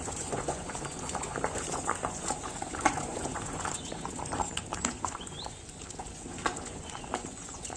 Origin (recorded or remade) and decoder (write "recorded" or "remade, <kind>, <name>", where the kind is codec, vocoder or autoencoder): remade, vocoder, Vocos